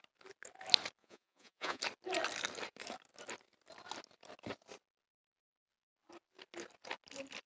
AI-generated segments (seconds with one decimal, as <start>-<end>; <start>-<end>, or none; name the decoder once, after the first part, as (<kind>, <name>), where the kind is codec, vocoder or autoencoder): 1.0-1.8 (vocoder, Vocos)